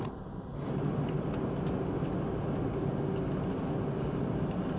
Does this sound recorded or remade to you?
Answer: recorded